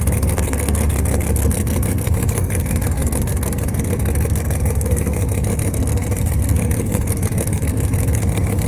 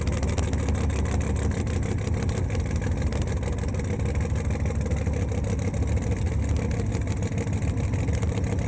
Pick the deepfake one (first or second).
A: first